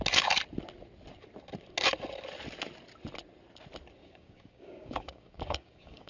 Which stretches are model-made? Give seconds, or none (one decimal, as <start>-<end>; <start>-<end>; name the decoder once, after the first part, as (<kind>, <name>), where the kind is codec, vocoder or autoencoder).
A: 4.0-6.1 (codec, DAC)